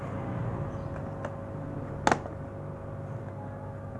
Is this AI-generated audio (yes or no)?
no